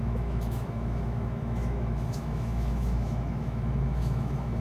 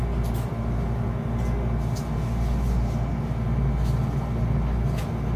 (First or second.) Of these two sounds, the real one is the second